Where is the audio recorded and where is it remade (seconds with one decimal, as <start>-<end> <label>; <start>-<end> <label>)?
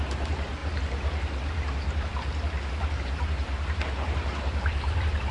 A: 0.0-0.6 remade; 0.6-1.5 recorded; 1.5-2.1 remade; 2.1-2.9 recorded; 2.9-5.3 remade